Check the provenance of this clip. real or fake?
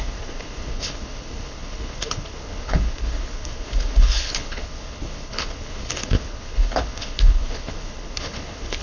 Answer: fake